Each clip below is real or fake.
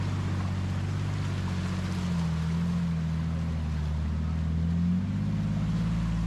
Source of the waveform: real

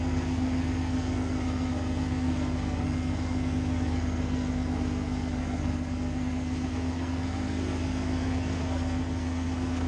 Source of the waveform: fake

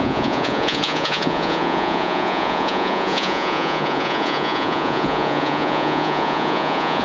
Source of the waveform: fake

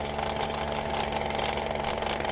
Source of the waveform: real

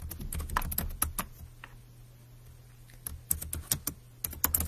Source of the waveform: real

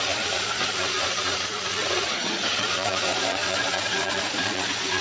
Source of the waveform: fake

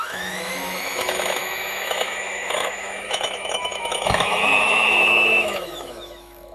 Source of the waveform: fake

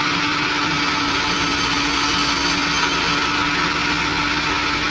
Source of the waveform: real